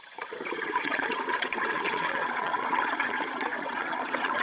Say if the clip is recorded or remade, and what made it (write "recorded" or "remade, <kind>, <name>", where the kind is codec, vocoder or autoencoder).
remade, vocoder, Vocos